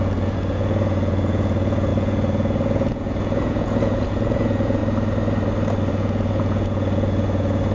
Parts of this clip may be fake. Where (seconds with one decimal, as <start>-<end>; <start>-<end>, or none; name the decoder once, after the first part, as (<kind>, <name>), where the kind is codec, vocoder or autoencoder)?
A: 0.0-4.8 (vocoder, Vocos); 5.9-7.7